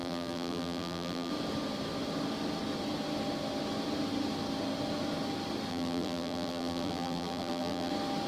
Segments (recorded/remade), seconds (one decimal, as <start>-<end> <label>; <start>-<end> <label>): 0.0-1.3 remade; 1.3-5.7 recorded; 5.7-7.9 remade; 7.9-8.3 recorded